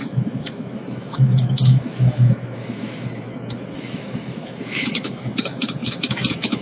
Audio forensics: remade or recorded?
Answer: remade